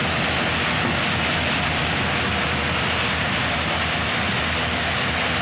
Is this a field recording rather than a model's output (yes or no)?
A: yes